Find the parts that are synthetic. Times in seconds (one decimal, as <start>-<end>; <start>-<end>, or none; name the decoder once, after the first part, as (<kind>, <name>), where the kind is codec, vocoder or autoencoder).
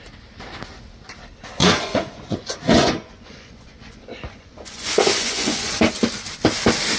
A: 1.6-5.8 (vocoder, Vocos)